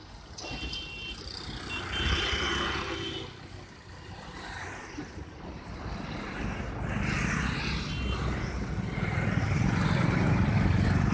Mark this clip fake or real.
real